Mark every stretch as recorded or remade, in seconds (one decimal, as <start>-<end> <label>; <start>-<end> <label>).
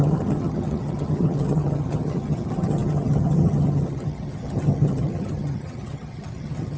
0.0-6.8 remade